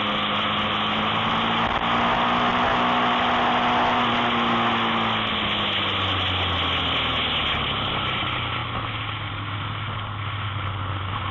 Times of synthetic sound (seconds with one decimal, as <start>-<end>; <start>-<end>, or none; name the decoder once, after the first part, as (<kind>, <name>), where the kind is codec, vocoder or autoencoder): none